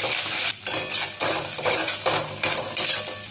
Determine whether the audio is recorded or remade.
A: recorded